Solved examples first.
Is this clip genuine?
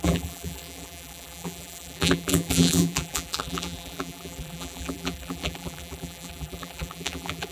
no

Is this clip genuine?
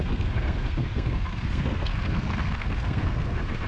no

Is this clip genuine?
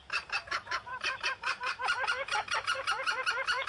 no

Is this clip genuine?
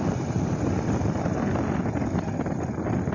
yes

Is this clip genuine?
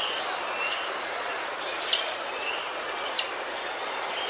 yes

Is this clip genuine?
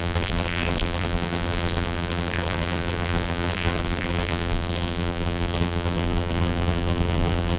no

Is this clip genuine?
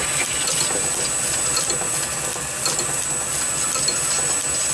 yes